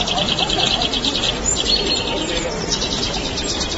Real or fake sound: real